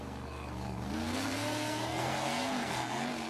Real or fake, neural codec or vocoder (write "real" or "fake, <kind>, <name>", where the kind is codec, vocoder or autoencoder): fake, codec, SNAC